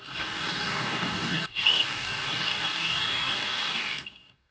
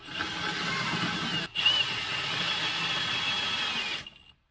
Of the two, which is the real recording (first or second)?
second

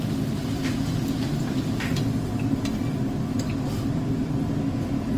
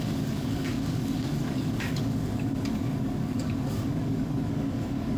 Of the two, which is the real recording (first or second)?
first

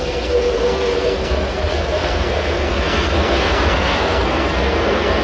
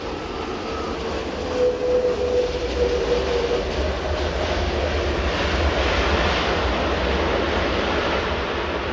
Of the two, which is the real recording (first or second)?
second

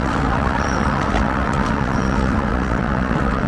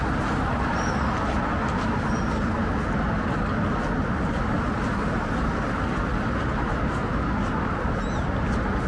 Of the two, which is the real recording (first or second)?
second